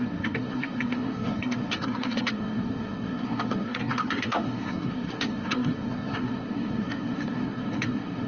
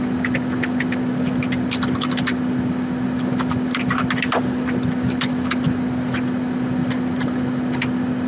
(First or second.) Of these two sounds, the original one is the second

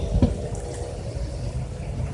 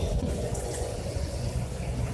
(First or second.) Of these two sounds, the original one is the first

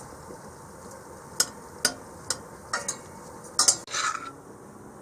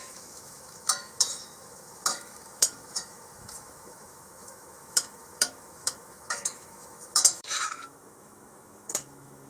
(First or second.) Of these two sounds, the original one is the first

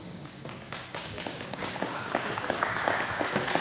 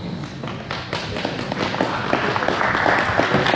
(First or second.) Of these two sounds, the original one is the second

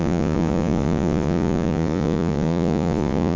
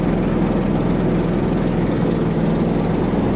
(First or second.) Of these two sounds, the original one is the second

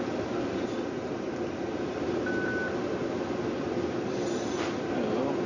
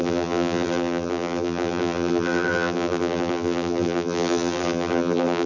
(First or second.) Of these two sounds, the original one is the first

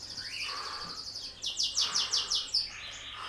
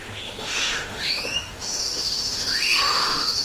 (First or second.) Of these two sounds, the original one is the first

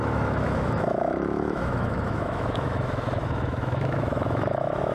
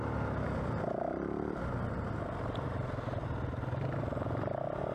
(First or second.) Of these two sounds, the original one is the second